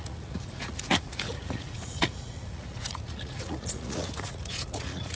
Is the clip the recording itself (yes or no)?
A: no